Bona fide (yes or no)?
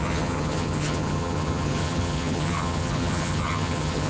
no